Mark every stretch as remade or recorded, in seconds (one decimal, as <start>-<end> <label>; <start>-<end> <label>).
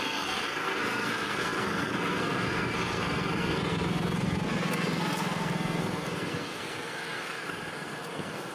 0.0-8.5 remade